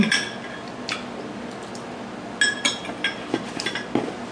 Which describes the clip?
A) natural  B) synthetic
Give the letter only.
A